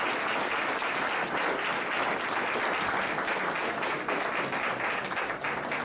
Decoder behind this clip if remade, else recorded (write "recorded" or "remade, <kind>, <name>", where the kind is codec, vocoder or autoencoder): recorded